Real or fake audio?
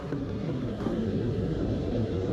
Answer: fake